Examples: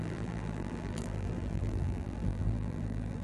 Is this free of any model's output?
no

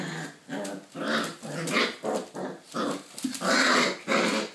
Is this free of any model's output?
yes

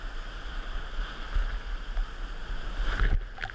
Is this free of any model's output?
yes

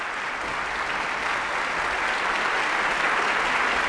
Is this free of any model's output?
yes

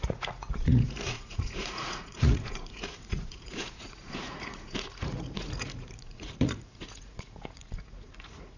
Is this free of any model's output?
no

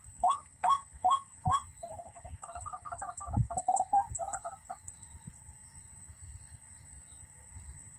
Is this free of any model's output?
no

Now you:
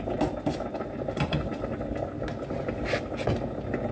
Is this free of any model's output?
yes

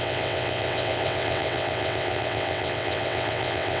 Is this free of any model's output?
no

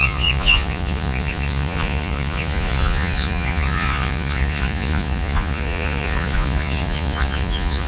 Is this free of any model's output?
no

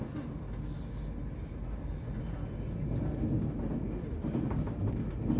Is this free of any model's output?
yes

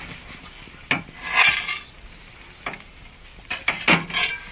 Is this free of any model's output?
yes